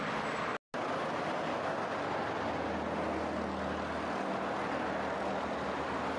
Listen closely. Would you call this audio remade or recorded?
recorded